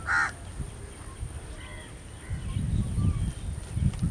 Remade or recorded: recorded